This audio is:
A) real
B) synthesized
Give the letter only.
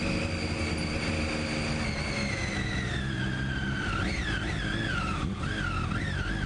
A